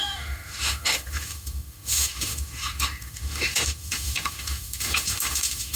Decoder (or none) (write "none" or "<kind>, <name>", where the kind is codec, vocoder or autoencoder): autoencoder, DAC-VAE